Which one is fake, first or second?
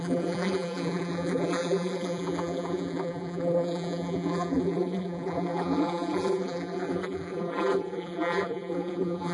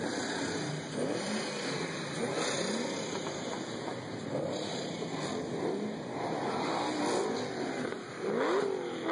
first